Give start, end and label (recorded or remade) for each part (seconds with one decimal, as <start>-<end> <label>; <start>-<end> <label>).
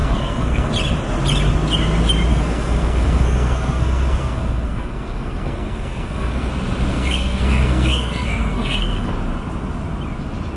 0.0-0.7 remade; 0.7-2.3 recorded; 2.3-6.5 remade; 6.5-6.9 recorded; 6.9-9.1 remade; 9.1-10.6 recorded